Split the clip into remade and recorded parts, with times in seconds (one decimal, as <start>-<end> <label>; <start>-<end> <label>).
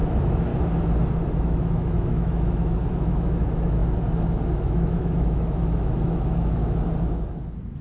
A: 0.0-0.5 remade; 0.5-1.3 recorded; 1.3-3.8 remade; 3.8-4.5 recorded; 4.5-6.6 remade; 6.6-7.8 recorded